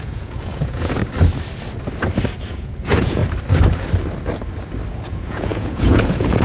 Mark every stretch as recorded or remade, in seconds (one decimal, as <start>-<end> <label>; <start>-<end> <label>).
0.0-1.0 remade; 1.0-2.5 recorded; 2.5-3.2 remade; 3.2-4.9 recorded; 4.9-6.4 remade